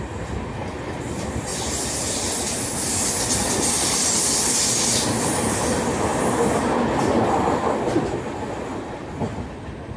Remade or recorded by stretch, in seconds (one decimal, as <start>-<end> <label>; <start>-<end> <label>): 0.0-10.0 recorded